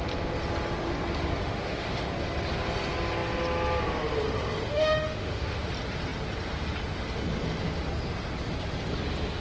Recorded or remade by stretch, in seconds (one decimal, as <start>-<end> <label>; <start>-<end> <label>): 0.0-1.4 recorded; 1.4-2.1 remade; 2.1-4.7 recorded; 4.7-5.6 remade; 5.6-9.4 recorded